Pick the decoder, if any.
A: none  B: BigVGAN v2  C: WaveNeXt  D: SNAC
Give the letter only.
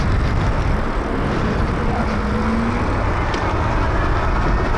A